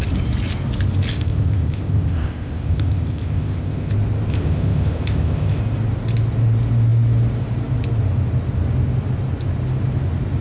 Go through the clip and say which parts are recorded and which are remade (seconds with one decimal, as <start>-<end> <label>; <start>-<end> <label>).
0.0-1.1 recorded; 1.1-3.9 remade; 3.9-4.3 recorded; 4.3-5.6 remade; 5.6-10.4 recorded